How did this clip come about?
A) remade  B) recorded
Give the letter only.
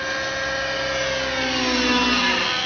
B